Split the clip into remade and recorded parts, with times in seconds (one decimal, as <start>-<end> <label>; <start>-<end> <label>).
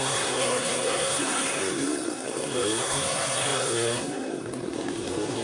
0.0-5.4 remade